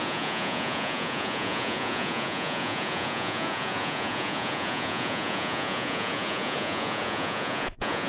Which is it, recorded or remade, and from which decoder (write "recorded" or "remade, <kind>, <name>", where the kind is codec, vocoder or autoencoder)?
remade, vocoder, Vocos